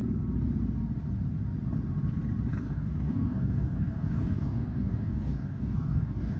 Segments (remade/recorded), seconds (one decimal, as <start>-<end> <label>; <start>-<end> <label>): 0.0-2.5 recorded; 2.5-6.4 remade